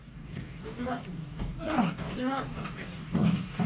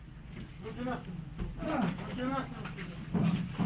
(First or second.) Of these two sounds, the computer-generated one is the first